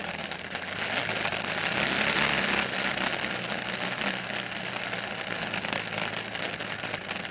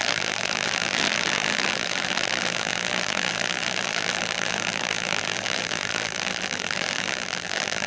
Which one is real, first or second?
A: first